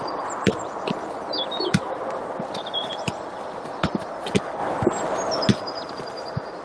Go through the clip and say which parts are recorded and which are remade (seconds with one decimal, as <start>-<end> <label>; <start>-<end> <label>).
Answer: 0.0-6.6 recorded